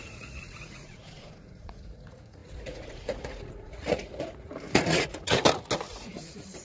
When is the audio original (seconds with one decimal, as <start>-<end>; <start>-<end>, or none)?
5.4-5.9